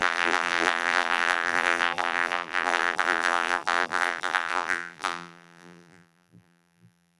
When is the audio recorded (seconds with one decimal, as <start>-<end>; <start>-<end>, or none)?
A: none